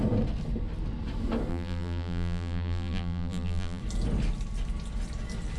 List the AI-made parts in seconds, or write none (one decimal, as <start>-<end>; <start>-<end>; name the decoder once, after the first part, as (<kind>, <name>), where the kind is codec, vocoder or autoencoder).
1.5-3.8 (vocoder, BigVGAN v2)